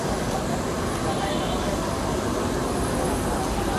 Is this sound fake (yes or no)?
no